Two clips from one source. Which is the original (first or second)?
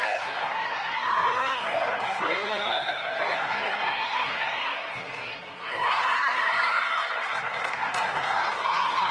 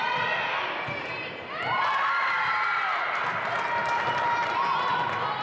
second